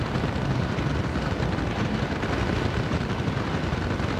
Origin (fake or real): fake